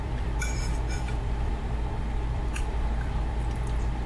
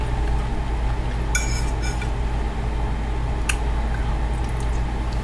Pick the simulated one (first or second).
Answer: first